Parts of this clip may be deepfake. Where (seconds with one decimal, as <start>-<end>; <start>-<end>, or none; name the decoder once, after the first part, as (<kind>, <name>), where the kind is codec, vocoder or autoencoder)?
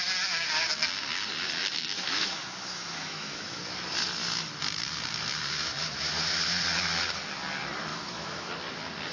1.6-3.6 (autoencoder, DAC-VAE); 7.9-8.5